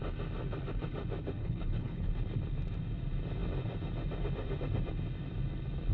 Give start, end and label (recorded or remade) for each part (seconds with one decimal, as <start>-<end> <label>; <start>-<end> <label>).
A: 0.0-1.4 recorded; 1.4-2.1 remade; 2.1-5.9 recorded